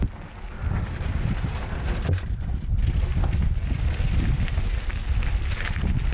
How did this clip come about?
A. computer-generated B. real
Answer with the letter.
B